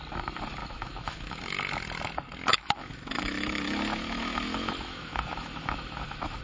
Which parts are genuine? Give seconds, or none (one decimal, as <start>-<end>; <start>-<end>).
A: 0.0-0.6; 1.4-2.5